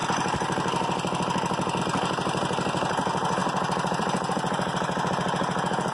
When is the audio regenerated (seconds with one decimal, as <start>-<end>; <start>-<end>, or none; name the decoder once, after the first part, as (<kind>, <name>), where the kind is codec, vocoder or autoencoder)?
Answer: 0.0-1.8 (vocoder, BigVGAN v2); 3.4-5.1